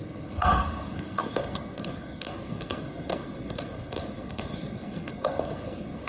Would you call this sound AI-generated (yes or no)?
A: yes